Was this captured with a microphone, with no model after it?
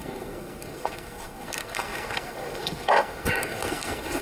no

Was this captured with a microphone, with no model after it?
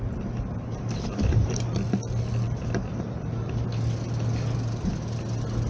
yes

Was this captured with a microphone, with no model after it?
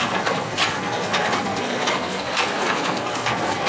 no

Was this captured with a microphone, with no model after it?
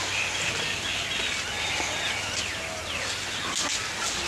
yes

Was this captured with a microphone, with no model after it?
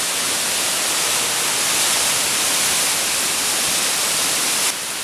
yes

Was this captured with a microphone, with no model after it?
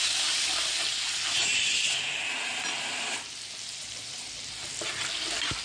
yes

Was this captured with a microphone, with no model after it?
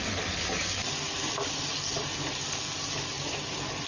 yes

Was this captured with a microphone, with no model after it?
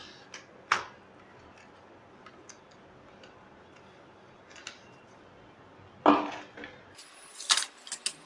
yes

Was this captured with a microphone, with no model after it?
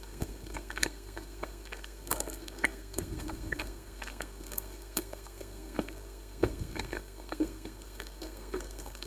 no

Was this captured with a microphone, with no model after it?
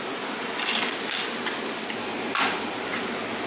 yes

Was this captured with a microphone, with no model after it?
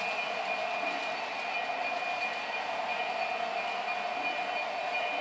yes